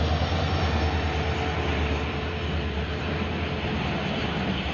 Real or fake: real